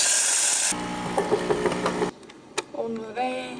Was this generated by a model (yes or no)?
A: no